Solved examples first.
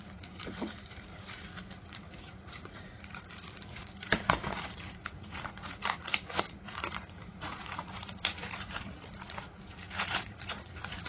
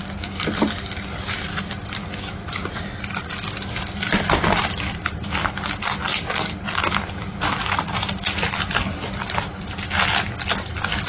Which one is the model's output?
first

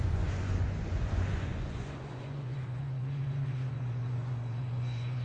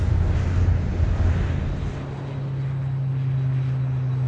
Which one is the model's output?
first